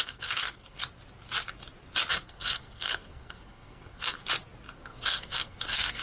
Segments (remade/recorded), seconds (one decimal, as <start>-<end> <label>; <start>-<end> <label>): 0.0-0.8 remade; 0.8-2.1 recorded; 2.1-4.2 remade; 4.2-4.7 recorded; 4.7-6.0 remade

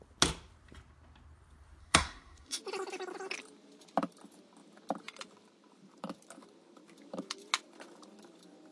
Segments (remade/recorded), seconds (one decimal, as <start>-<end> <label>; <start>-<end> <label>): 0.0-1.8 recorded; 1.8-2.6 remade; 2.6-8.7 recorded